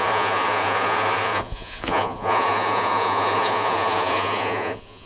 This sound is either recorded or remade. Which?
remade